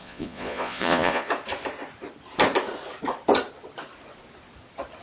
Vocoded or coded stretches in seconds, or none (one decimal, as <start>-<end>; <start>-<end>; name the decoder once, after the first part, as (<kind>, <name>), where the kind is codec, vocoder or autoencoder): 0.0-1.3 (vocoder, Vocos)